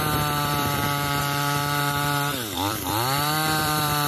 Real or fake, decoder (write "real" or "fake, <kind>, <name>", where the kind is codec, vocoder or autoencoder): fake, vocoder, BigVGAN v2